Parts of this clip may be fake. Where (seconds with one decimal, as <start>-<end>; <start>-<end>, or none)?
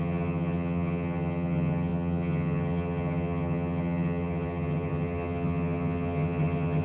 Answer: 0.0-6.8